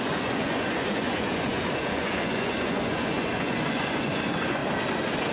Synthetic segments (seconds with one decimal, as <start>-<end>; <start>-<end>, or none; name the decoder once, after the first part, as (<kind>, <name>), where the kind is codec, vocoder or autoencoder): 0.0-4.6 (vocoder, Vocos)